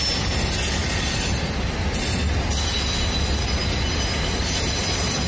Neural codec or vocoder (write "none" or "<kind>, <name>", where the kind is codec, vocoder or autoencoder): none